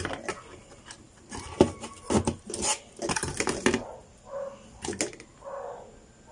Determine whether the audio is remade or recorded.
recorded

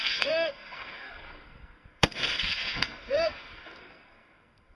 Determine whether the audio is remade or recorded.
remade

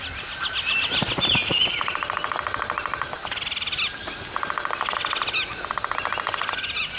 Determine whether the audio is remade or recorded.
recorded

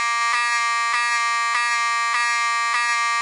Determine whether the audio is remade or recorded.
recorded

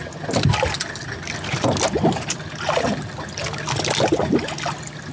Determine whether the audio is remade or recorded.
recorded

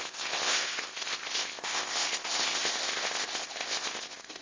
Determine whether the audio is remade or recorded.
remade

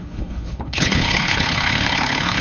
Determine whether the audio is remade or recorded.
remade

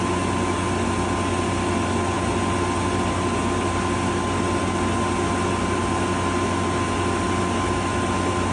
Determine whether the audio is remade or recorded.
recorded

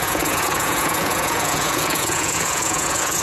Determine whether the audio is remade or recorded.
remade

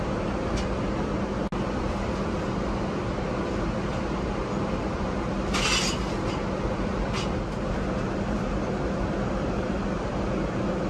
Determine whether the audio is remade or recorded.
recorded